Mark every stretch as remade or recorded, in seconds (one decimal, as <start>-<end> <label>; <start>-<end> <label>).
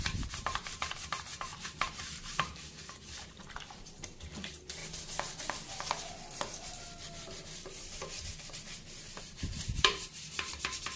0.0-4.8 remade; 4.8-9.2 recorded; 9.2-11.0 remade